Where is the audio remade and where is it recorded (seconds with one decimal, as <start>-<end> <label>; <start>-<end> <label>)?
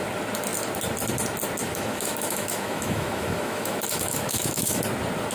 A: 0.0-1.6 recorded; 1.6-4.8 remade; 4.8-5.3 recorded